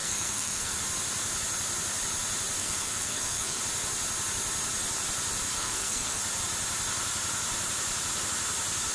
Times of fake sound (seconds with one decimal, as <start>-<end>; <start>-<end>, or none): 0.0-0.8; 2.6-3.6; 5.5-6.2